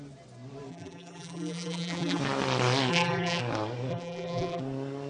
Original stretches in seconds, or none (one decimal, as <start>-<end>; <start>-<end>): 0.0-0.7; 2.2-2.9; 3.4-3.9; 4.6-5.1